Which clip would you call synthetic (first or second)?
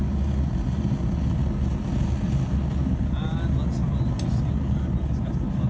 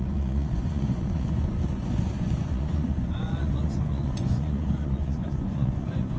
second